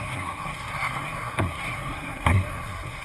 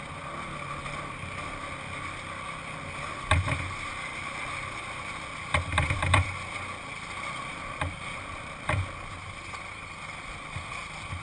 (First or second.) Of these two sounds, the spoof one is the first